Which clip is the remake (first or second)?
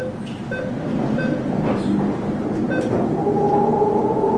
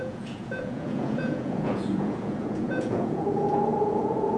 second